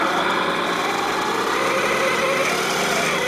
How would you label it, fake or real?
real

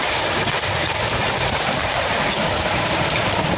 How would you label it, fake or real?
real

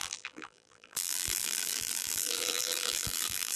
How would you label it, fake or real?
fake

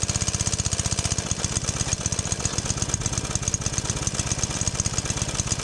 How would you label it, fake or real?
real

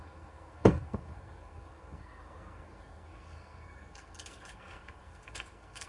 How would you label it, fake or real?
fake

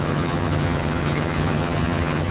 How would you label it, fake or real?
fake